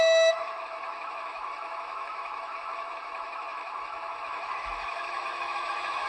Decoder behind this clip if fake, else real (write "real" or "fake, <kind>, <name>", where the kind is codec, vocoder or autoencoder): fake, autoencoder, DAC-VAE